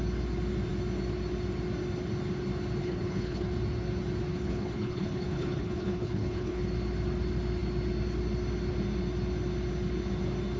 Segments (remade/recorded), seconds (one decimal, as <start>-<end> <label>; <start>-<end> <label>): 0.0-2.8 recorded; 2.8-3.5 remade; 3.5-4.3 recorded; 4.3-6.6 remade; 6.6-10.6 recorded